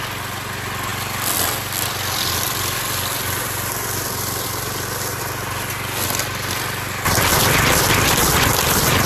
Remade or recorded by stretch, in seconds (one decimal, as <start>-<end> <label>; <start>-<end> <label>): 0.0-9.1 recorded